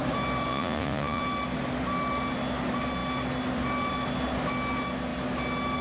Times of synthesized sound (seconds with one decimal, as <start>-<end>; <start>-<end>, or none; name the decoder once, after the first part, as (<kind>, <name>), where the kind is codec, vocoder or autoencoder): 0.5-1.2 (vocoder, Vocos)